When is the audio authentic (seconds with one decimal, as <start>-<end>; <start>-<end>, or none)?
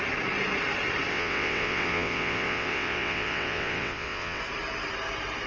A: 0.0-1.1; 4.4-5.5